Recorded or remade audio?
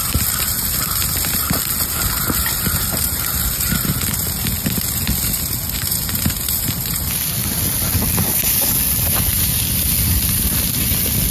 recorded